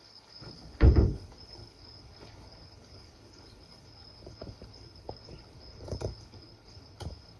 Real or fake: fake